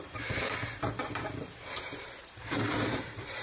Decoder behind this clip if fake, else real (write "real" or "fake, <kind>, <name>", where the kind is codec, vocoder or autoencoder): fake, vocoder, BigVGAN v2